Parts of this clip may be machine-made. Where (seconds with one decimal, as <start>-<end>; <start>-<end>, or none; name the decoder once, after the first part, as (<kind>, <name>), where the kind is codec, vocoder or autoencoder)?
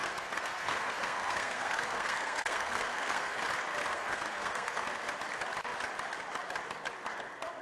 0.0-3.4 (codec, SNAC); 3.9-4.8